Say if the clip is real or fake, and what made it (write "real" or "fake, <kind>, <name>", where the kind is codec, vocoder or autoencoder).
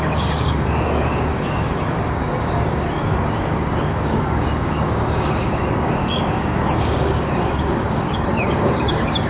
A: fake, codec, DAC